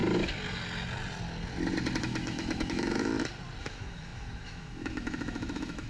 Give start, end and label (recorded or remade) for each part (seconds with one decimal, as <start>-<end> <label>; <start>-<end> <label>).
0.0-2.0 recorded; 2.0-3.1 remade; 3.1-3.6 recorded; 3.6-5.9 remade